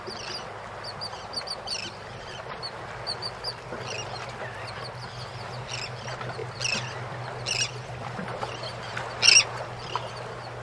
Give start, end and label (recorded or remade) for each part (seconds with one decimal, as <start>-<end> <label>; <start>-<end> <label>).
0.0-10.6 recorded